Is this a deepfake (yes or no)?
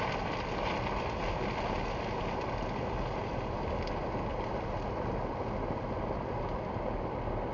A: no